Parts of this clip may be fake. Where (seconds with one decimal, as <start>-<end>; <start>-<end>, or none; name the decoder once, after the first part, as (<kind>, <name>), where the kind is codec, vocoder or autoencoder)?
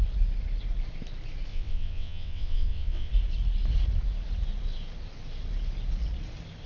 1.5-3.1 (vocoder, WaveNeXt)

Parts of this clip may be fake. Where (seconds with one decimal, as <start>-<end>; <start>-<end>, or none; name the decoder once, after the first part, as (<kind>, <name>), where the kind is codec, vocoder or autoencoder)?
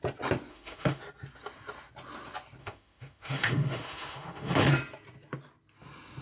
0.5-1.0 (autoencoder, DAC-VAE); 2.6-4.7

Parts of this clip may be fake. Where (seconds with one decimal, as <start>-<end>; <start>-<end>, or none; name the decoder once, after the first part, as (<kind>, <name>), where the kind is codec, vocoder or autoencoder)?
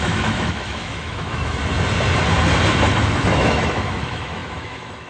0.0-1.6 (autoencoder, DAC-VAE); 3.0-5.1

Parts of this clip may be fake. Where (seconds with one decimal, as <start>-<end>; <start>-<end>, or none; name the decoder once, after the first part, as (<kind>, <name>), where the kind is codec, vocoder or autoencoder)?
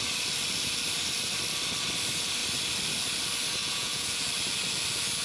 3.6-4.2 (vocoder, Vocos)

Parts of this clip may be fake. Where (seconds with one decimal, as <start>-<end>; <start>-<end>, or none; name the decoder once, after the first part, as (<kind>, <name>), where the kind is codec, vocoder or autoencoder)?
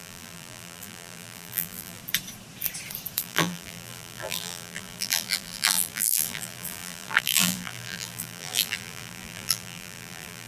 0.0-2.0 (vocoder, BigVGAN v2); 3.2-10.5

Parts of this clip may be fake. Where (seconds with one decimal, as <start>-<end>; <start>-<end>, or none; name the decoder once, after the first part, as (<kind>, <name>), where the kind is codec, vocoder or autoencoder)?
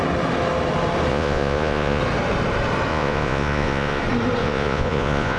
1.1-2.0 (vocoder, Vocos); 2.9-4.0; 4.4-5.4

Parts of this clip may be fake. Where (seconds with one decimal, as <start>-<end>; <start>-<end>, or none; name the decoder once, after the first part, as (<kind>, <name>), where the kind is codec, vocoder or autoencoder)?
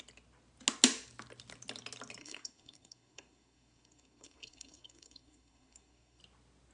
2.2-6.2 (codec, SNAC)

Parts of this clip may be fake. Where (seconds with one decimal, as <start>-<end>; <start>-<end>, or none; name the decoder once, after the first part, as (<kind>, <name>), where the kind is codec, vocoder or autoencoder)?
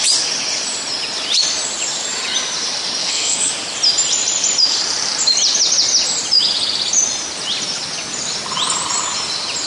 3.0-3.5 (codec, SNAC)